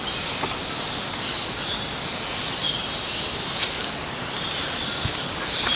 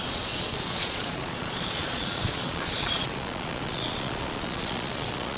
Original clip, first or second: first